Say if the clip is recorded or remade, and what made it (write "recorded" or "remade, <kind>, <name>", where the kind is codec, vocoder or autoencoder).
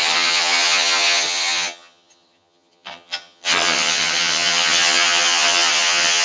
remade, vocoder, HiFi-GAN